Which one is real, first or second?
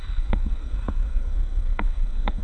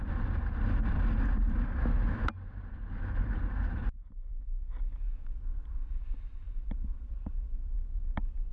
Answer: second